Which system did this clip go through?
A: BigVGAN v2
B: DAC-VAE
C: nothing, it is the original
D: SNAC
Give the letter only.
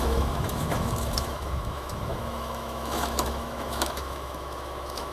B